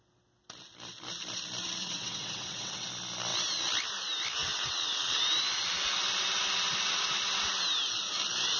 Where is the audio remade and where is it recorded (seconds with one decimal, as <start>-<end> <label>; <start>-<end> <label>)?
0.0-1.8 recorded; 1.8-2.9 remade; 2.9-4.4 recorded; 4.4-5.2 remade; 5.2-8.6 recorded